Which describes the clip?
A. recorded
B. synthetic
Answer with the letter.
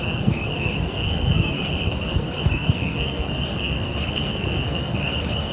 B